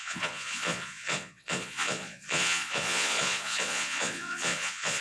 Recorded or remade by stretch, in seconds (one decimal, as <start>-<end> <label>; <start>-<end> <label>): 0.0-5.0 remade